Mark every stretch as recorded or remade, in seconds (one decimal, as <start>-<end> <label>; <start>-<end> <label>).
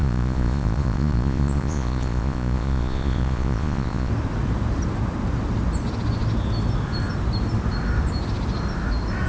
0.0-4.1 remade; 4.1-9.3 recorded